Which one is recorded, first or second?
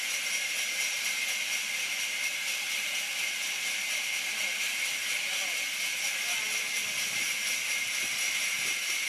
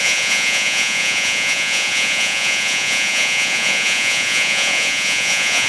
first